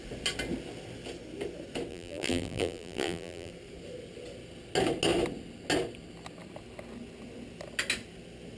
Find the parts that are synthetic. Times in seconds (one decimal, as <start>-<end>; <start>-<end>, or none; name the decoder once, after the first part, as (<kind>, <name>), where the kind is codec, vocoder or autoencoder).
1.9-3.5 (vocoder, BigVGAN v2)